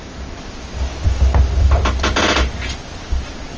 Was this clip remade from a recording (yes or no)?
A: no